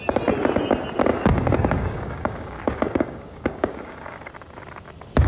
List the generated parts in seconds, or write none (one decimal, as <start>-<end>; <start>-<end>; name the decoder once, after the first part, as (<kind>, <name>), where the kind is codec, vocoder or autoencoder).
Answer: 1.1-4.3 (codec, DAC)